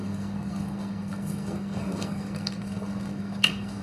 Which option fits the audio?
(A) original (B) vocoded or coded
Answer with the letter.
B